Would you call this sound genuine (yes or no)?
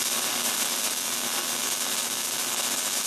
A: yes